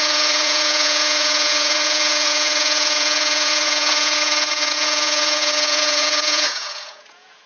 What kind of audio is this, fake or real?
fake